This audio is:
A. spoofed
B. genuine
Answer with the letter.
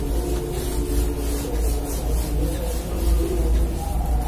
B